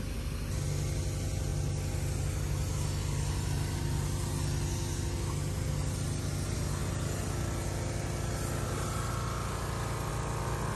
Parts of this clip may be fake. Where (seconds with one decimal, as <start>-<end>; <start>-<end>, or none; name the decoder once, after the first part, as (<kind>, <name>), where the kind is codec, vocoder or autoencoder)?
none